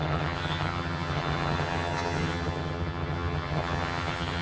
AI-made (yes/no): yes